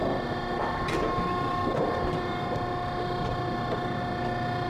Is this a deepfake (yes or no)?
no